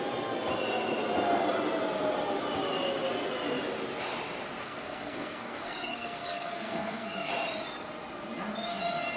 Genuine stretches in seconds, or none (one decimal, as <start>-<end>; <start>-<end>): 0.0-4.6; 7.3-9.2